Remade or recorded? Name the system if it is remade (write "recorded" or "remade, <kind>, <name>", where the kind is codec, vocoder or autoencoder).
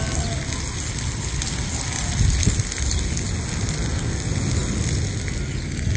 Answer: recorded